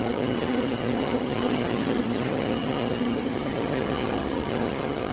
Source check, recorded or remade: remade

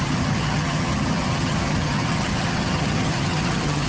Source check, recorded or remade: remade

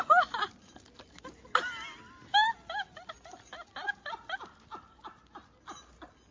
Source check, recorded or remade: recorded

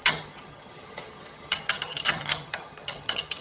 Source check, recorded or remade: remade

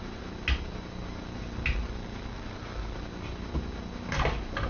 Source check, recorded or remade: recorded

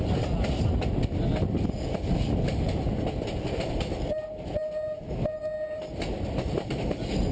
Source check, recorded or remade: recorded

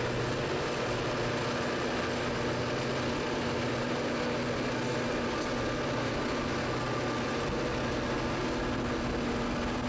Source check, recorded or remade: recorded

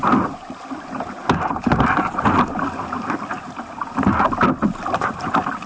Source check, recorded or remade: recorded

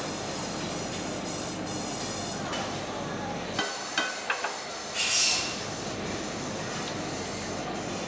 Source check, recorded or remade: recorded